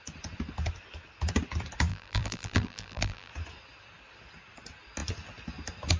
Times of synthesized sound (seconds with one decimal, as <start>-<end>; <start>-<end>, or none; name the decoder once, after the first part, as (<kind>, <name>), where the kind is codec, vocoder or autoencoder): 1.9-3.3 (vocoder, BigVGAN v2)